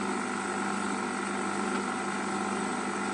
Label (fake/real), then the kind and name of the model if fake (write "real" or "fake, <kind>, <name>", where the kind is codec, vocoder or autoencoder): real